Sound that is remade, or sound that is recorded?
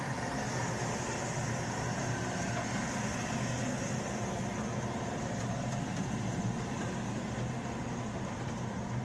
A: recorded